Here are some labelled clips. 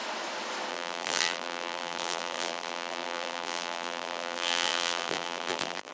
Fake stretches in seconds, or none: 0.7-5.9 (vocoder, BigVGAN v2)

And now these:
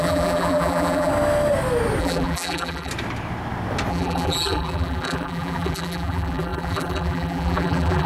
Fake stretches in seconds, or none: 0.0-1.1 (vocoder, BigVGAN v2); 2.0-2.9; 3.9-8.1

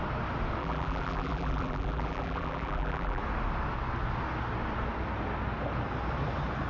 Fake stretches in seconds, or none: 0.6-3.2 (vocoder, BigVGAN v2)

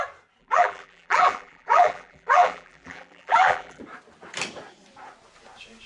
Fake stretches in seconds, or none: 0.4-3.8 (vocoder, BigVGAN v2)

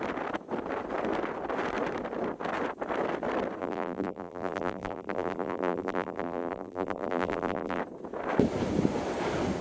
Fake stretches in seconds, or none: 3.6-7.8 (vocoder, BigVGAN v2)

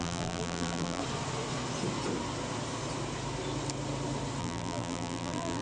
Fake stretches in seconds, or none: 0.0-1.0 (vocoder, BigVGAN v2); 4.4-5.6

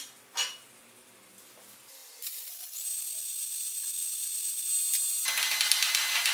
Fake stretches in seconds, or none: none